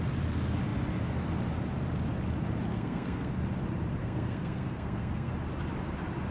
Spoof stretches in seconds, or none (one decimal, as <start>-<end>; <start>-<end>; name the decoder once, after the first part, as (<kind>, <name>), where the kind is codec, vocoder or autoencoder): 2.7-3.3 (codec, SNAC); 4.0-5.3